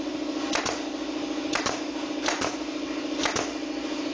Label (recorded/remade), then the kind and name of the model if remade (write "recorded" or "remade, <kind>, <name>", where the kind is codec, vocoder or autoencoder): recorded